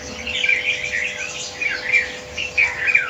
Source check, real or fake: fake